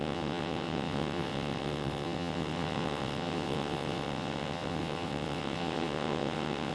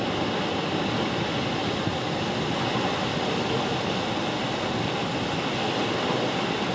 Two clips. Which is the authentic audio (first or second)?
second